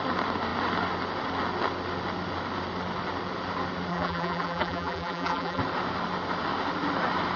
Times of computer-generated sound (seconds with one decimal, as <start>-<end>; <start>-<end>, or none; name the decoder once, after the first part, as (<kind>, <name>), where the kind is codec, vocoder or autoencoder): 3.9-5.6 (vocoder, BigVGAN v2)